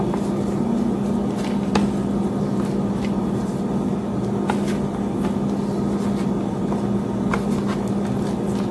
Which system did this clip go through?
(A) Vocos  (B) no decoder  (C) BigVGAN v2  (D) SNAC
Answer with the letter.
B